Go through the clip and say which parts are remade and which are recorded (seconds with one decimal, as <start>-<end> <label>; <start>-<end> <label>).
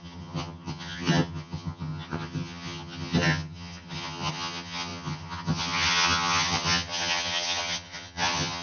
0.0-8.6 remade